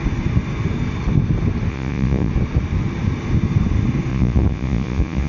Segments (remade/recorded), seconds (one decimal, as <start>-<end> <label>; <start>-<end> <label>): 0.0-1.7 recorded; 1.7-2.3 remade; 2.3-4.1 recorded; 4.1-5.3 remade